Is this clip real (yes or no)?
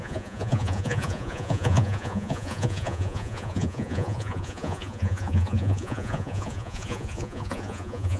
no